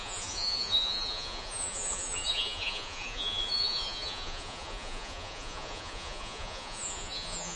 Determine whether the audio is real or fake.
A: fake